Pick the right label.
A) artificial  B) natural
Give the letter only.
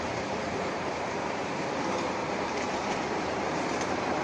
A